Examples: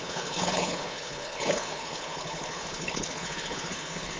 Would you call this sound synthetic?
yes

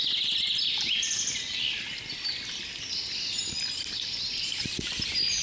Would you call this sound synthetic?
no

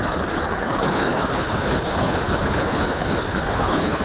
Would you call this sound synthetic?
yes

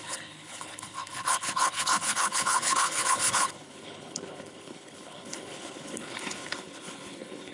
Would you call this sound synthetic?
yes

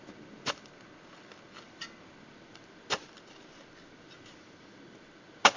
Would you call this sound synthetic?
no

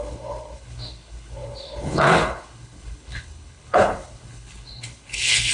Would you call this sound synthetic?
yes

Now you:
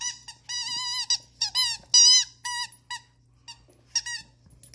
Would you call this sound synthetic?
no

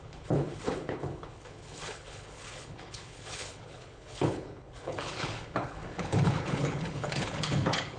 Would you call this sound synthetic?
yes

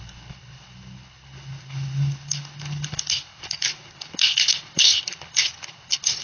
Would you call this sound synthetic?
yes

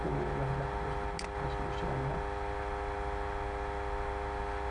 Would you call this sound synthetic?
no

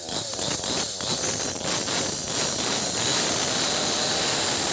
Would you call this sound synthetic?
no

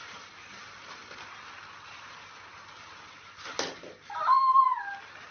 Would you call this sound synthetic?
no